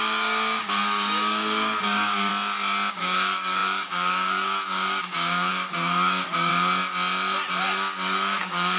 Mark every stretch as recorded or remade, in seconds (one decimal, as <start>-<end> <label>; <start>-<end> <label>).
0.0-2.3 remade; 2.3-2.9 recorded; 2.9-6.5 remade; 6.5-7.6 recorded; 7.6-8.8 remade